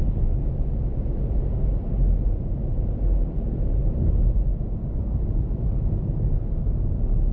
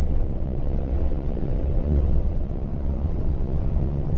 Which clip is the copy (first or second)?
second